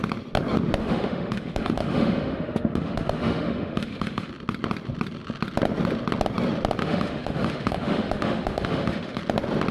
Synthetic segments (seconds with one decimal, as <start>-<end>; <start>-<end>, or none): 0.8-4.3; 6.8-9.2